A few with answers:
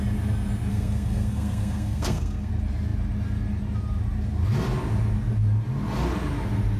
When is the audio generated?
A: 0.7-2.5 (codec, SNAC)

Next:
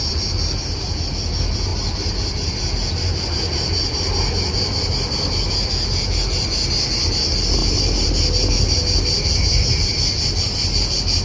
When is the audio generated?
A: 7.6-8.4 (vocoder, BigVGAN v2)

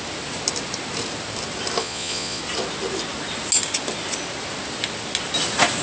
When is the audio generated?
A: 1.8-2.4 (vocoder, Vocos)

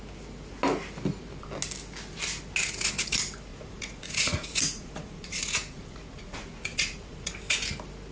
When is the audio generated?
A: 3.5-7.3 (vocoder, Vocos)